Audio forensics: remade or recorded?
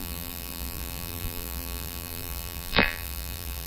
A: remade